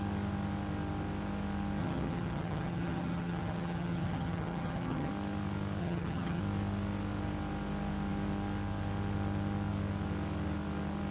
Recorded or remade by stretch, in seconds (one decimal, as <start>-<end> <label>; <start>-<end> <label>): 0.0-1.8 recorded; 1.8-5.1 remade; 5.1-5.8 recorded; 5.8-6.4 remade; 6.4-11.1 recorded